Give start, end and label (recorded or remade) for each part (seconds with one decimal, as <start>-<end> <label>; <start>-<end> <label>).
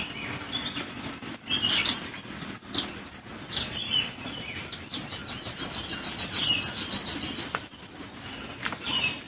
0.0-9.3 recorded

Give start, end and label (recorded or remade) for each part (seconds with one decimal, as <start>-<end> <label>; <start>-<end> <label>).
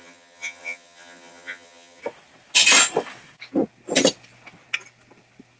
0.0-2.0 remade; 2.0-5.6 recorded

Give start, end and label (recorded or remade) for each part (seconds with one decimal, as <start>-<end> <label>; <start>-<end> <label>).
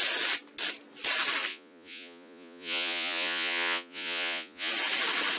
0.0-1.5 recorded; 1.5-4.7 remade; 4.7-5.4 recorded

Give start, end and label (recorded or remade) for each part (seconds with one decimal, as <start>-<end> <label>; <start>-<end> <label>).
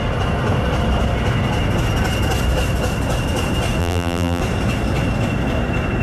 0.0-3.8 recorded; 3.8-4.4 remade; 4.4-6.0 recorded